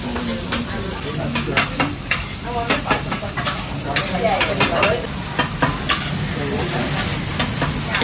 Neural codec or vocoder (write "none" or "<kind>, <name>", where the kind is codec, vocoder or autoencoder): none